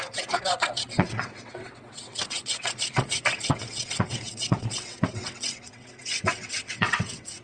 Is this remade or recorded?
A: remade